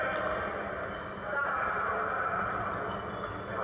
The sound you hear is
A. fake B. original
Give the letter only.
B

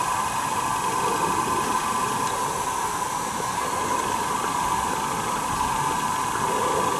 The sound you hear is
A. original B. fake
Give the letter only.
A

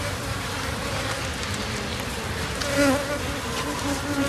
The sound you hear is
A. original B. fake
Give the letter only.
A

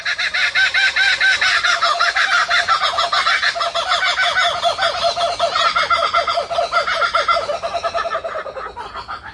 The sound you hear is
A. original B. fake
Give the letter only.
A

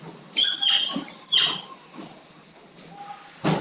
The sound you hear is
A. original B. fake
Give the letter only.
A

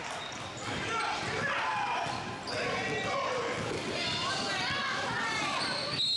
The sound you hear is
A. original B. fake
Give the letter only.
A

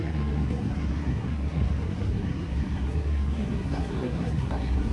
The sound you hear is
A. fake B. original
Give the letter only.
A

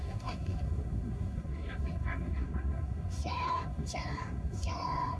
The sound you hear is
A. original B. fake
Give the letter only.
B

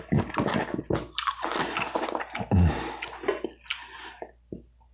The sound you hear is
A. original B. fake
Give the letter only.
A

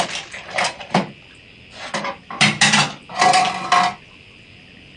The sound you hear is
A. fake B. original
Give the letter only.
B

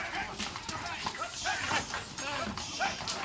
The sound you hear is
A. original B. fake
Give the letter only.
A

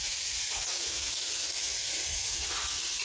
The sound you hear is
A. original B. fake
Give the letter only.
A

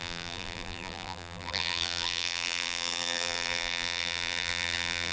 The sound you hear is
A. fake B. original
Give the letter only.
A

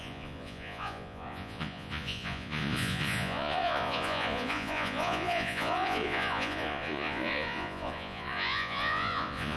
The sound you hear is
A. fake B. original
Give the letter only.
A